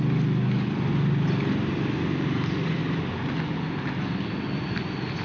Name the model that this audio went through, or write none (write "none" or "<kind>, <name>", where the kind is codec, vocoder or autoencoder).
none